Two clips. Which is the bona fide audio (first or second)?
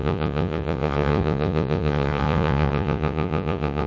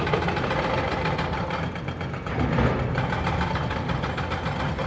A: second